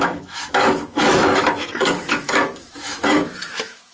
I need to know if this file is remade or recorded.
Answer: remade